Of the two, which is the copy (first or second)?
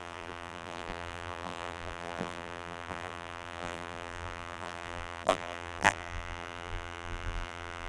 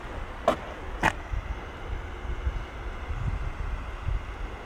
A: first